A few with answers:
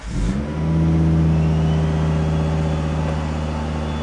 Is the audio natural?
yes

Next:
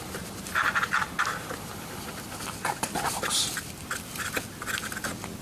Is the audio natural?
yes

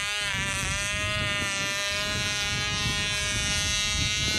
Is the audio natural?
yes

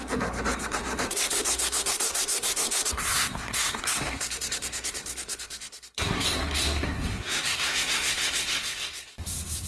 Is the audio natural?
no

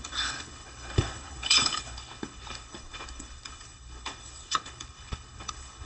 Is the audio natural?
no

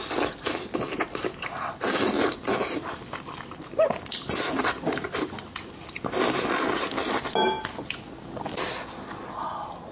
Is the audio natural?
yes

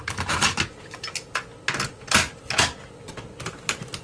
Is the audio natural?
yes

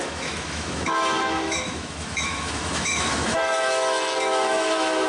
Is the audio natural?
no